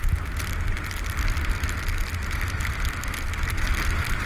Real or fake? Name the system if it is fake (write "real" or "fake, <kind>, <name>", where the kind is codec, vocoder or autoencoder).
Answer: real